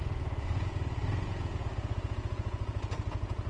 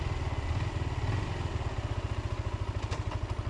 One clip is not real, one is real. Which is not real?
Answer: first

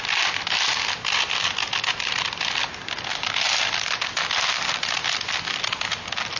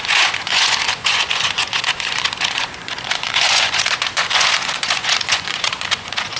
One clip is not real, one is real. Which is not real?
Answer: second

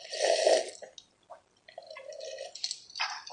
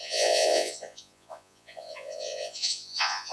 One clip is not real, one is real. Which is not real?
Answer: second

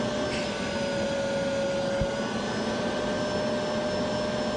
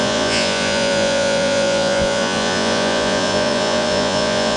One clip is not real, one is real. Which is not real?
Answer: second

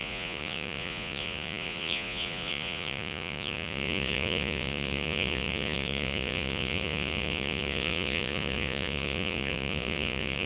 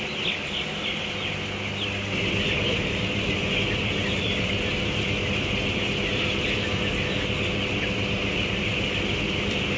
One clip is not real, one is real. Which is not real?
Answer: first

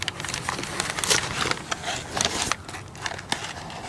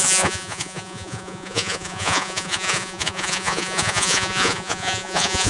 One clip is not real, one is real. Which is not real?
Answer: second